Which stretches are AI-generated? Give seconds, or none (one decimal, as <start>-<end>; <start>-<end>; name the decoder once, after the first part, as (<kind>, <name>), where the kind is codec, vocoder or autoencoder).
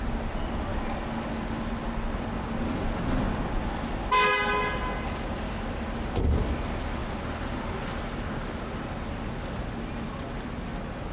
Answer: none